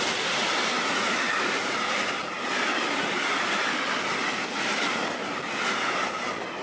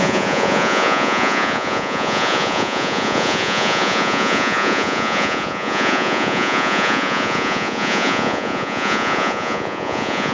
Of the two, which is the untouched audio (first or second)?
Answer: first